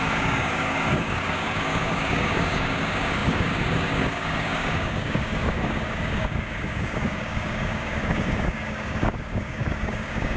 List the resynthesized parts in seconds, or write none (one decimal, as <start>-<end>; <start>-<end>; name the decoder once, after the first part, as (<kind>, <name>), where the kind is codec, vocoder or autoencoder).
0.0-10.4 (codec, DAC)